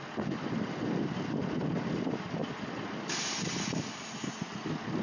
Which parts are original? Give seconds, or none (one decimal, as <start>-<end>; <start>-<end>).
0.0-5.0